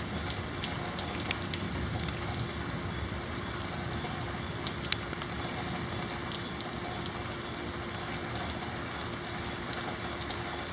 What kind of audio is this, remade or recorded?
recorded